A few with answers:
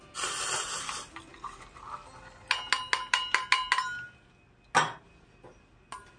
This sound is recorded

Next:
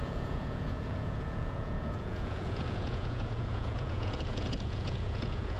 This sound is remade